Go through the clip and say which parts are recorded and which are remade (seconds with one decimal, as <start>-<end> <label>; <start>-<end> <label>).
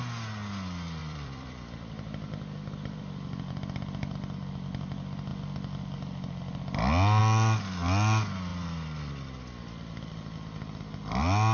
0.0-1.0 recorded; 1.0-3.1 remade; 3.1-8.5 recorded; 8.5-10.1 remade; 10.1-11.5 recorded